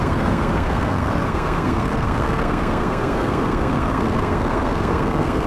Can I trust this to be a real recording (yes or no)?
no